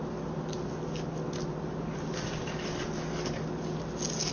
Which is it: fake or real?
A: real